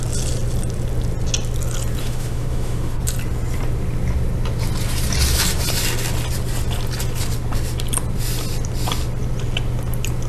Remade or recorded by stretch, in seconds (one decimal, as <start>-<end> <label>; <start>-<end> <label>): 0.0-2.0 recorded; 2.0-3.0 remade; 3.0-10.3 recorded